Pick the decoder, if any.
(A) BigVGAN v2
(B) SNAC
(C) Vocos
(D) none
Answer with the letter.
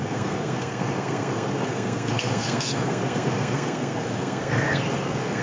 B